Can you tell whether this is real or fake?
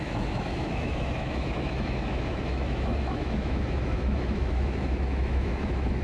fake